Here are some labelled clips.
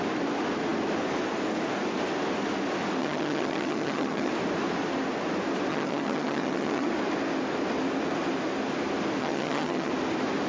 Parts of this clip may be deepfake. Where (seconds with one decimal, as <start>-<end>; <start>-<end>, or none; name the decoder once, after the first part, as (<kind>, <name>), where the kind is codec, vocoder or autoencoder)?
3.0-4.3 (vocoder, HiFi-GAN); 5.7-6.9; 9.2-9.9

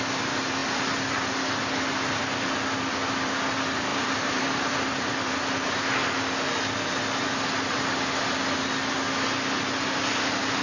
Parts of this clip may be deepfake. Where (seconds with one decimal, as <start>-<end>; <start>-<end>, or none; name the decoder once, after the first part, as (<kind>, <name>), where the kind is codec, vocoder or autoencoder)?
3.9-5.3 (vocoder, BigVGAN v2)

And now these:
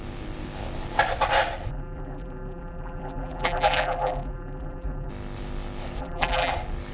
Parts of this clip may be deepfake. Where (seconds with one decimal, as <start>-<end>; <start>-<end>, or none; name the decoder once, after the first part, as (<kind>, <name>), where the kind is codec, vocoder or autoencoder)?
1.7-5.1 (vocoder, BigVGAN v2); 6.0-6.5

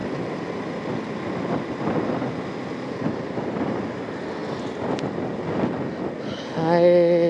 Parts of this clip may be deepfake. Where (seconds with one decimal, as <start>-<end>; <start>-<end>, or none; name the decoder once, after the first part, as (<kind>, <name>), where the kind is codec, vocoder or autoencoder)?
2.9-4.4 (vocoder, BigVGAN v2)